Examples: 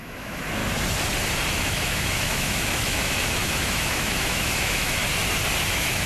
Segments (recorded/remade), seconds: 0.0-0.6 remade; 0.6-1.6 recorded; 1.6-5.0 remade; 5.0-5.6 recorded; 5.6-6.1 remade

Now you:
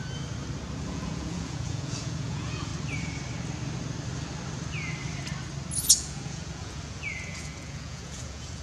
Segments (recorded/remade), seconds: 0.0-0.9 recorded; 0.9-2.7 remade; 2.7-5.8 recorded; 5.8-8.6 remade

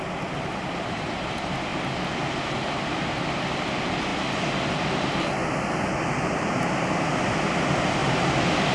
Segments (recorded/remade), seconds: 0.0-8.0 remade; 8.0-8.7 recorded

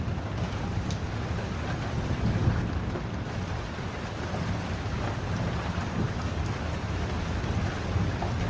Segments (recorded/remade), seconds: 0.0-8.5 recorded

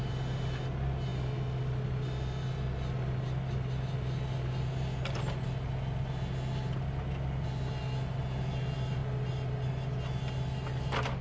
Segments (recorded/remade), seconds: 0.0-11.2 recorded

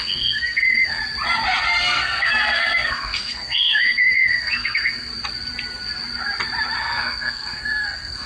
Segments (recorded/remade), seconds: 0.0-1.0 remade; 1.0-1.8 recorded; 1.8-5.1 remade; 5.1-6.8 recorded; 6.8-8.3 remade

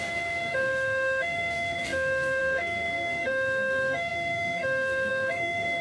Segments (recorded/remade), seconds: 0.0-5.8 remade

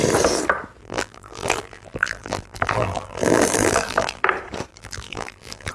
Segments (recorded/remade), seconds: 0.0-0.8 recorded; 0.8-4.2 remade; 4.2-4.7 recorded; 4.7-5.7 remade